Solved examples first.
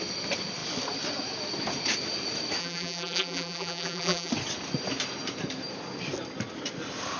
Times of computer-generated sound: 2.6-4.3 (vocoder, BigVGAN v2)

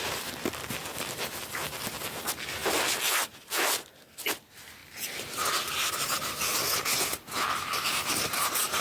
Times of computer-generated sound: 0.0-8.8 (vocoder, BigVGAN v2)